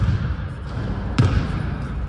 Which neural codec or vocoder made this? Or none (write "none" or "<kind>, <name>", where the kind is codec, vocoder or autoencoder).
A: none